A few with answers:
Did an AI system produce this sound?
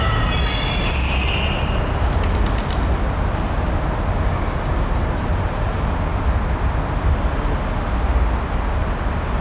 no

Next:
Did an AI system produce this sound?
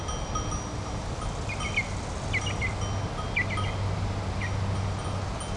no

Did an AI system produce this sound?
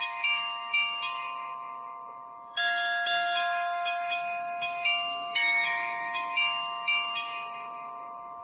yes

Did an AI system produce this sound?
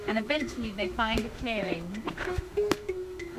yes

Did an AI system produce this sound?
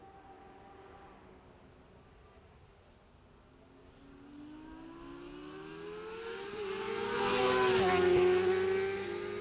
no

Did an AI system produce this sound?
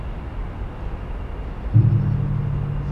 no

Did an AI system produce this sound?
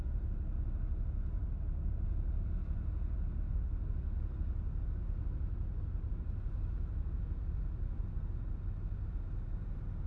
no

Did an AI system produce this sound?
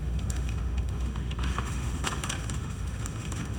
yes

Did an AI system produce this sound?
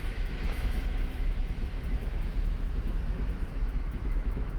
yes